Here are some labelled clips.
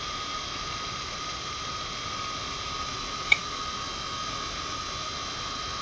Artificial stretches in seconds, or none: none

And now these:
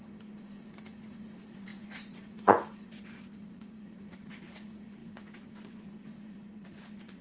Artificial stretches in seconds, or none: 0.0-7.2 (vocoder, Vocos)

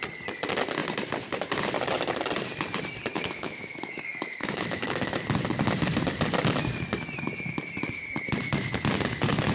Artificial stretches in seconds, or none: 3.1-5.2 (autoencoder, DAC-VAE)